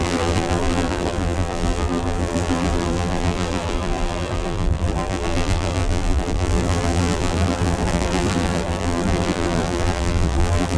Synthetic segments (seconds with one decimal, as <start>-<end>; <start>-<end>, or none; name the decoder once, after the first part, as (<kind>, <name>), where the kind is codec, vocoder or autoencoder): 0.0-10.8 (vocoder, BigVGAN v2)